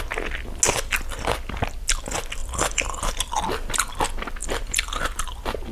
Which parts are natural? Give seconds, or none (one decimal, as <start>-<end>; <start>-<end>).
0.0-2.4; 3.0-4.4; 5.0-5.7